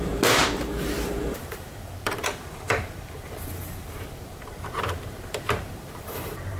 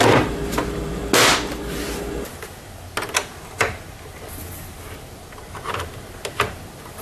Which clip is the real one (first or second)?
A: second